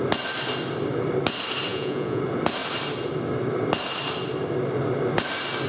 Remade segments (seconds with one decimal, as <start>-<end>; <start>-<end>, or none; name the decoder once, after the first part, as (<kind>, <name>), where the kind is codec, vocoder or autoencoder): 1.7-2.2 (vocoder, Vocos)